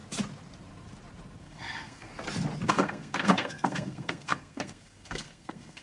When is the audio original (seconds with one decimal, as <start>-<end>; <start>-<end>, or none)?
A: 0.0-1.4; 2.1-2.7